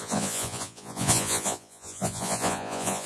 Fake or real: fake